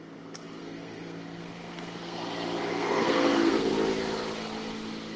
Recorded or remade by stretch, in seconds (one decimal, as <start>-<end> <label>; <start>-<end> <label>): 0.0-0.6 recorded; 0.6-2.2 remade; 2.2-2.7 recorded; 2.7-3.7 remade; 3.7-5.2 recorded